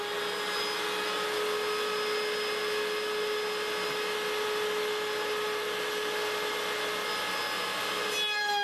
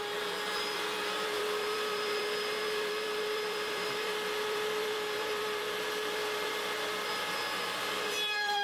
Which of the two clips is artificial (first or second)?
second